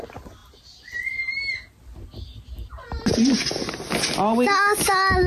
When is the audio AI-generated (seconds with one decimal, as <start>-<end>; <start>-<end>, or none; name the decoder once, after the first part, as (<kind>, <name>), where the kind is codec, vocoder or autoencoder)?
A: none